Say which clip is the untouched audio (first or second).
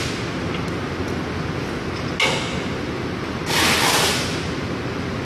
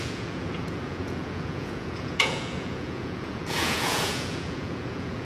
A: first